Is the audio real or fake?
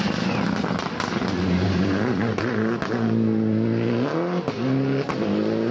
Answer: real